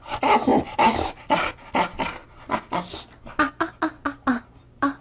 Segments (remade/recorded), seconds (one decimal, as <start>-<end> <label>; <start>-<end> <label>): 0.0-5.0 recorded